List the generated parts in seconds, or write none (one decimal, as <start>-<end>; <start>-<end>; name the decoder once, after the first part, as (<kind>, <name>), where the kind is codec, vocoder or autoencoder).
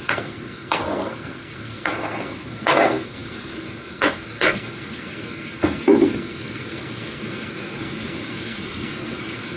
0.0-9.6 (codec, SNAC)